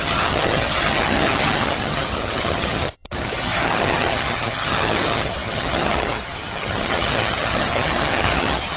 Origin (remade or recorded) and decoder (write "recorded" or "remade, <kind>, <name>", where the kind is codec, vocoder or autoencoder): remade, vocoder, HiFi-GAN